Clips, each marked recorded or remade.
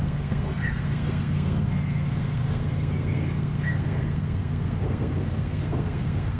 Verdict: remade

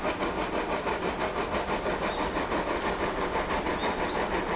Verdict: recorded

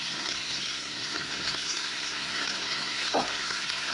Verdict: remade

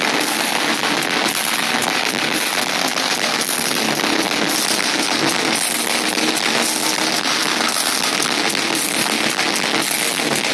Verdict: recorded